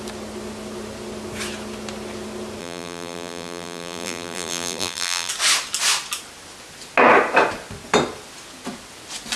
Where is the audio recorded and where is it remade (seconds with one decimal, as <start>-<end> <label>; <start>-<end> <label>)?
0.0-2.6 recorded; 2.6-5.3 remade; 5.3-9.4 recorded